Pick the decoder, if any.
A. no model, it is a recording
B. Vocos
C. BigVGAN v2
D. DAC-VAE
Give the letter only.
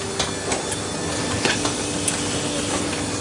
A